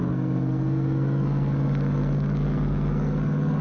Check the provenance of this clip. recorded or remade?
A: remade